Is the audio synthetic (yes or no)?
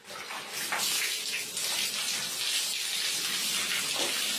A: no